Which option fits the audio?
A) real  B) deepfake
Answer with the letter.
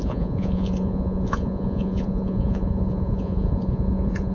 B